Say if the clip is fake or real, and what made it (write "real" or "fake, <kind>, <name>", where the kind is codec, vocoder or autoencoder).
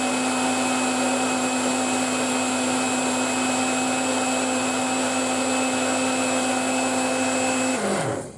real